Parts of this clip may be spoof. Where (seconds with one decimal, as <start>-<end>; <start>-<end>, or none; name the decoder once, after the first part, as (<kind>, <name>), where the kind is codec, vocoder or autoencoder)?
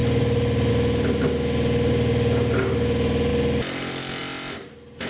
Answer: none